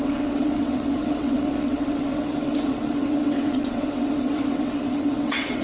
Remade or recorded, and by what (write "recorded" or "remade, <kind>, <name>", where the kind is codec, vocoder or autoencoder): remade, vocoder, WaveNeXt